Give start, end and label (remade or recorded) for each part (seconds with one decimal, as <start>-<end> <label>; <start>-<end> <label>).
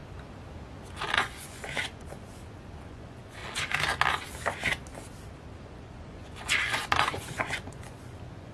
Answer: 0.0-1.1 recorded; 1.1-3.4 remade; 3.4-5.6 recorded; 5.6-8.5 remade